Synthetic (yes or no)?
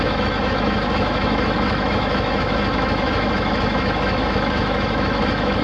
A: yes